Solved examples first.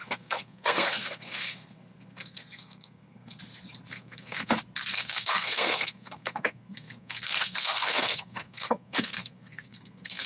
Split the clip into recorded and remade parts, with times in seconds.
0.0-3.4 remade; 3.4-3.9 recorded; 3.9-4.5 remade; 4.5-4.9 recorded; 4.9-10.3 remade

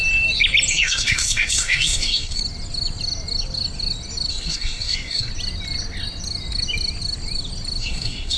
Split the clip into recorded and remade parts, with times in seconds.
0.0-0.7 recorded; 0.7-2.4 remade; 2.4-4.3 recorded; 4.3-5.3 remade; 5.3-7.8 recorded; 7.8-8.4 remade

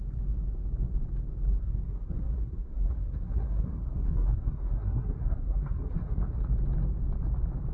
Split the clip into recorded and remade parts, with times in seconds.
0.0-1.6 recorded; 1.6-6.2 remade; 6.2-7.7 recorded

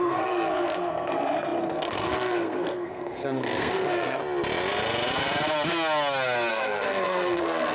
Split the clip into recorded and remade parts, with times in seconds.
0.0-4.2 remade; 4.2-6.5 recorded; 6.5-7.7 remade

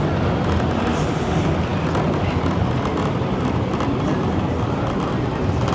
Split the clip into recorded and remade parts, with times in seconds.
0.0-5.7 recorded